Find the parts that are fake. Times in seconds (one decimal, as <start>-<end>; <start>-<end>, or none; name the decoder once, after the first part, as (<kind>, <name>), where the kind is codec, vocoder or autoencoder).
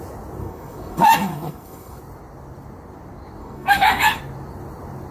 0.4-2.0 (codec, SNAC); 3.4-4.2